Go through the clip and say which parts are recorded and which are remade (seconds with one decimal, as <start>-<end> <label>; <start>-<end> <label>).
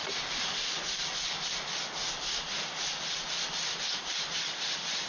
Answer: 0.0-5.1 recorded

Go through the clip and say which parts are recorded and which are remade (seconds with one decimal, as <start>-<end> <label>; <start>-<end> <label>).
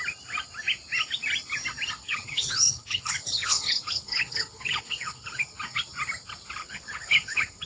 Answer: 0.0-2.0 recorded; 2.0-5.6 remade; 5.6-6.6 recorded; 6.6-7.7 remade